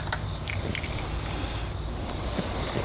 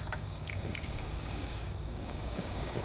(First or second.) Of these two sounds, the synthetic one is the second